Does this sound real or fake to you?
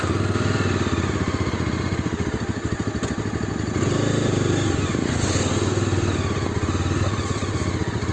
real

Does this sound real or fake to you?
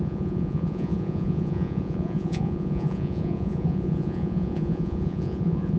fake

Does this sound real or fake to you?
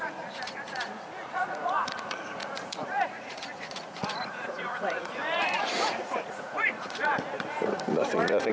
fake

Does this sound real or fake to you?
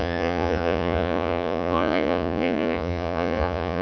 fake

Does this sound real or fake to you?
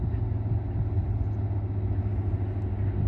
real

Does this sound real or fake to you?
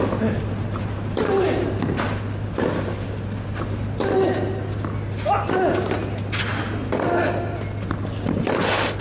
real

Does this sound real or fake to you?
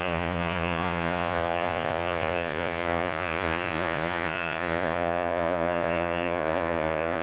fake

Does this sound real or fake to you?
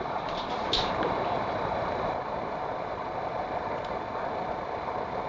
real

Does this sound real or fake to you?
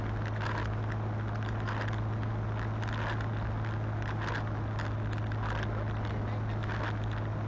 real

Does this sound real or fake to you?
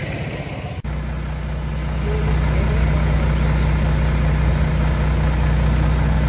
real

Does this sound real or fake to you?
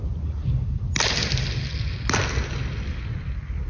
real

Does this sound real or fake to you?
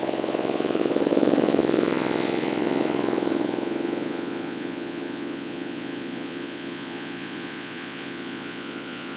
fake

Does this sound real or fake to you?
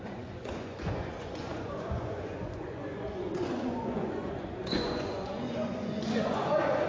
fake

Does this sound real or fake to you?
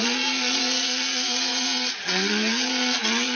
fake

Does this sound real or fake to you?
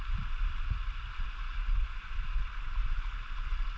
real